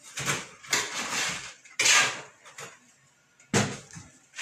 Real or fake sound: real